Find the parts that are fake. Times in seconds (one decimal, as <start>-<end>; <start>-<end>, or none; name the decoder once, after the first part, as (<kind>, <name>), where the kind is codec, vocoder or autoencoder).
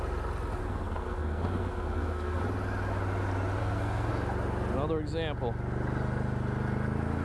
0.6-2.4 (codec, SNAC); 3.6-4.1